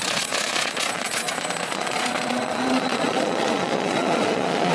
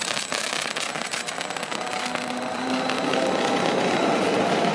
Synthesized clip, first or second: first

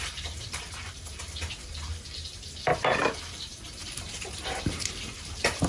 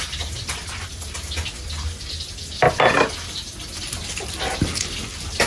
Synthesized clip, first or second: first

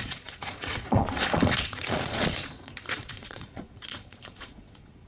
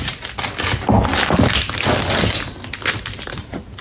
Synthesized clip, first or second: first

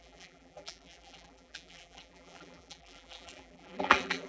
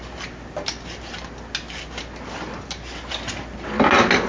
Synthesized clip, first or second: first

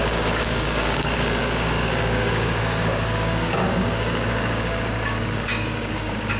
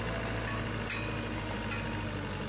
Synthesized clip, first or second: first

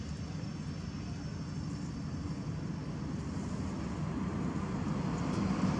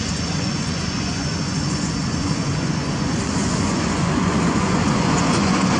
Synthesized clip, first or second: second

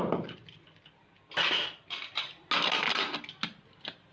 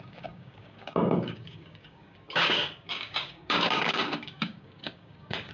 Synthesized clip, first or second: second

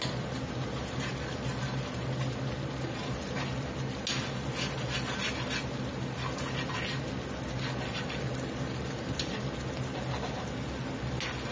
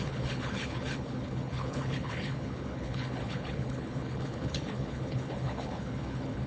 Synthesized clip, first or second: second